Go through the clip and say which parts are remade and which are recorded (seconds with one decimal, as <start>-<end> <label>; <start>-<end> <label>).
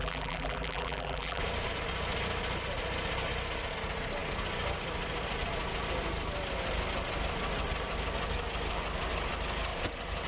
0.0-1.4 remade; 1.4-10.3 recorded